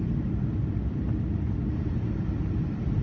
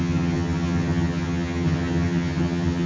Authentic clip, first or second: first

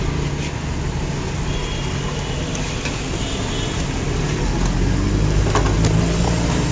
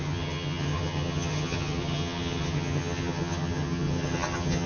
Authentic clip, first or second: first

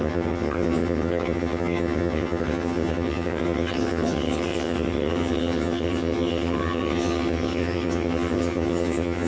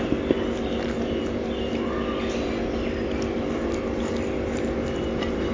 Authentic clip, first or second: second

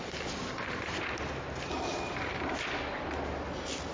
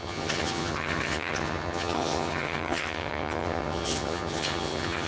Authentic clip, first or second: first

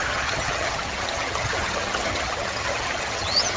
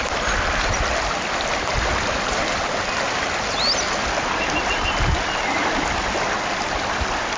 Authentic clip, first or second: second